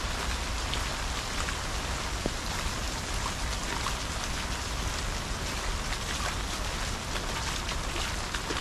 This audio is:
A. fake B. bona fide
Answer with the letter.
B